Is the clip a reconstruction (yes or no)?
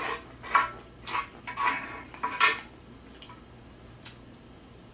no